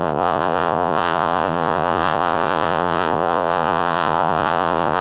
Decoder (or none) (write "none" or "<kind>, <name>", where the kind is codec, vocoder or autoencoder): vocoder, Vocos